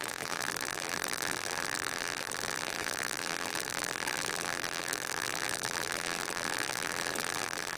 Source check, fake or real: fake